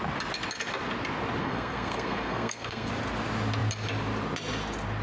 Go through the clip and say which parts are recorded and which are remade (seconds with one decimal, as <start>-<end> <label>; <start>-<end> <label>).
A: 0.0-1.4 recorded; 1.4-2.9 remade; 2.9-5.0 recorded